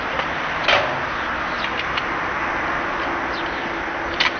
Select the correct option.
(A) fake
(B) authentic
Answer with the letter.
B